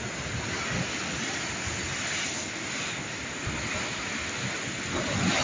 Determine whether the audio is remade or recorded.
recorded